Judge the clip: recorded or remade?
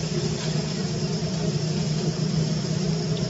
remade